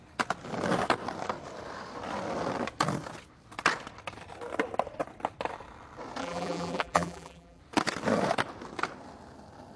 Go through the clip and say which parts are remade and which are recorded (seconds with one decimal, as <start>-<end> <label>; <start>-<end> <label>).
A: 0.0-6.2 recorded; 6.2-7.6 remade; 7.6-9.8 recorded